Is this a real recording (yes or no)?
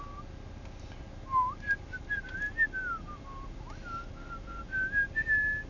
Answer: yes